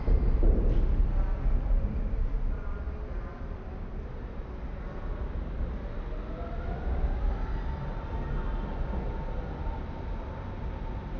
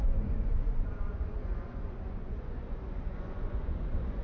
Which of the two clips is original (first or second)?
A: first